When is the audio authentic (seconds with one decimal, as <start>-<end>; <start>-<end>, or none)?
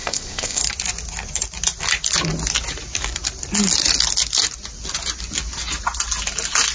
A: 0.6-6.7